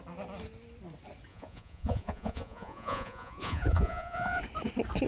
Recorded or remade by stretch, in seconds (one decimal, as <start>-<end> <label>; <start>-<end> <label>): 0.0-1.3 recorded; 1.3-4.4 remade; 4.4-5.1 recorded